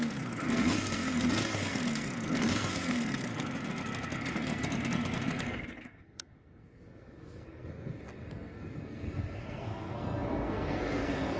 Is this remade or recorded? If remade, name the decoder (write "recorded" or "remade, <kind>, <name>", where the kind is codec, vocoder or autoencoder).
remade, codec, SNAC